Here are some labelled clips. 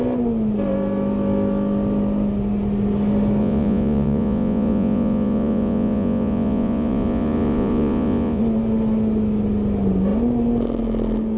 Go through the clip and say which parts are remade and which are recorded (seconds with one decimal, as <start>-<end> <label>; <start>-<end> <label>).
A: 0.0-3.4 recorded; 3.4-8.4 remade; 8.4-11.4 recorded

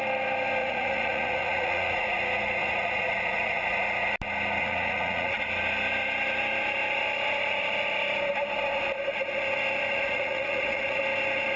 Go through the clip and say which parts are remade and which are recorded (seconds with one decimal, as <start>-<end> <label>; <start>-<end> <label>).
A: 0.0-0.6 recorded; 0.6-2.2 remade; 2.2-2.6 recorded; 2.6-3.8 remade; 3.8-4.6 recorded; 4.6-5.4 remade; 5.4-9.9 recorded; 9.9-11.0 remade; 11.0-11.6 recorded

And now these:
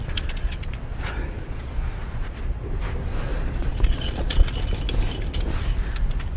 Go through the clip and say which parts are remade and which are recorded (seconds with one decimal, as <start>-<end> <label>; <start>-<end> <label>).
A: 0.0-2.8 remade; 2.8-3.3 recorded; 3.3-4.5 remade; 4.5-6.4 recorded

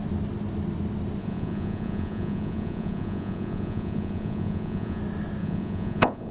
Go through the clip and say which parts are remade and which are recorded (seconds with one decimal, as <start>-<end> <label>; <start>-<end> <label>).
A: 0.0-1.2 recorded; 1.2-5.0 remade; 5.0-5.4 recorded; 5.4-6.3 remade